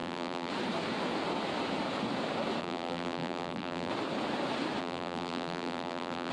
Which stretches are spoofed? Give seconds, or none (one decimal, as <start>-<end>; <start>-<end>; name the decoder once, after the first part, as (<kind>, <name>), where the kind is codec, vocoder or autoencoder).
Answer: 0.0-0.5 (vocoder, BigVGAN v2); 2.6-3.9; 4.8-6.3